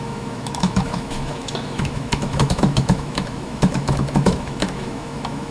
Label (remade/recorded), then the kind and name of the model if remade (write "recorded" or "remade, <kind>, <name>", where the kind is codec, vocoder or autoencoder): remade, autoencoder, DAC-VAE